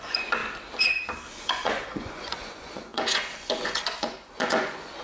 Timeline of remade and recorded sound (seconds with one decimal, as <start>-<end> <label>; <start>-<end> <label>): 0.0-0.4 remade; 0.4-1.3 recorded; 1.3-5.0 remade